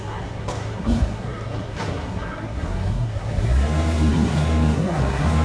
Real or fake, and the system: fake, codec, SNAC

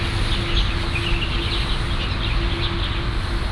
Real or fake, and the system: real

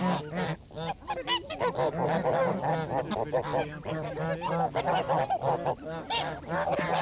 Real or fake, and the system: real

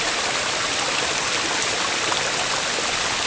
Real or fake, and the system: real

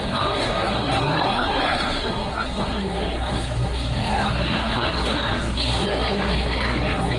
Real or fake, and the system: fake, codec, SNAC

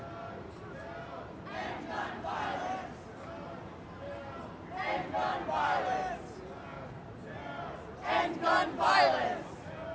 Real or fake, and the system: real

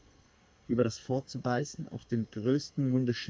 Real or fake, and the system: fake, codec, SNAC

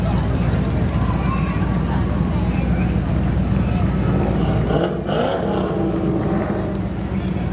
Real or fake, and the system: real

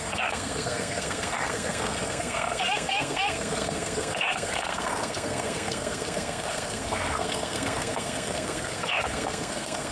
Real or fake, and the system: fake, codec, SNAC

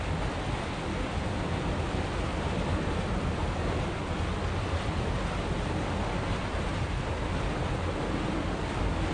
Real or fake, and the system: real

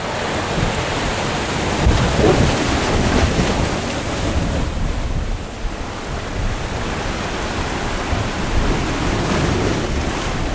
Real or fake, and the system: real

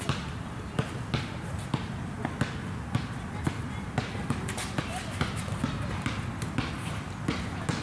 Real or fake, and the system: real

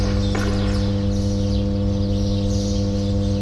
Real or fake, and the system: real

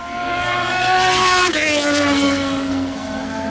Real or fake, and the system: fake, codec, SNAC